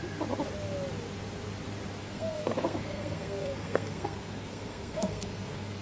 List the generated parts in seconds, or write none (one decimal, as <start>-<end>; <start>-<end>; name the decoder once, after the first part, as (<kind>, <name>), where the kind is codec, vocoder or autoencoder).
2.0-5.8 (codec, SNAC)